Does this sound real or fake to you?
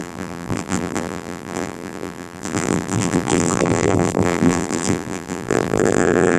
fake